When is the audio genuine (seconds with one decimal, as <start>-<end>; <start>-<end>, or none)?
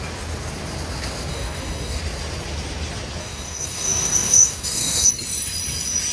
0.0-1.3; 2.0-3.2; 5.1-6.1